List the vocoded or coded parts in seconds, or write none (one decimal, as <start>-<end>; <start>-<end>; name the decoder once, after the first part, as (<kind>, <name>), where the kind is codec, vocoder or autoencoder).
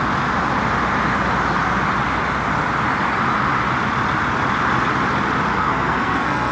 5.5-6.5 (codec, SNAC)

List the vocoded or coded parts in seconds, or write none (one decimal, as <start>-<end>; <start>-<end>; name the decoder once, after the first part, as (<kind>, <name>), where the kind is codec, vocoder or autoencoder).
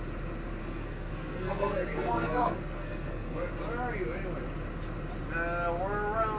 0.6-3.5 (codec, SNAC)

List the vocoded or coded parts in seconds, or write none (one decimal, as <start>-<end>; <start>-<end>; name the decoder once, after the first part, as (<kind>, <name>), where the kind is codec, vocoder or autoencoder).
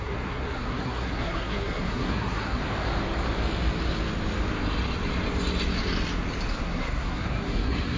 0.0-2.6 (codec, SNAC); 6.5-8.0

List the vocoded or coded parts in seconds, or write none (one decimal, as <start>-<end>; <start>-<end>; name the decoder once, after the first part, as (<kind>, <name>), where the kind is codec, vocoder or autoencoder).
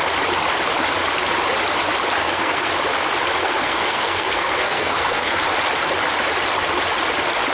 2.2-2.7 (codec, SNAC); 3.4-5.4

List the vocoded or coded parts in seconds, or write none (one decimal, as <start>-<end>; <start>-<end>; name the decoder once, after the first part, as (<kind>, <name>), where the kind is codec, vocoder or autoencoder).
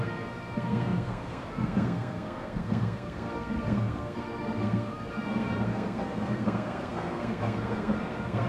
0.0-8.5 (codec, SNAC)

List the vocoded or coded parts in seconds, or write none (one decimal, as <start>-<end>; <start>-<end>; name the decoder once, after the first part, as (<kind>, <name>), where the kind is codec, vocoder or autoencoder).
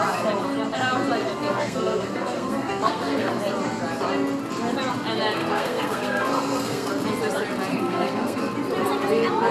1.2-3.3 (codec, SNAC); 5.4-6.9; 7.7-8.4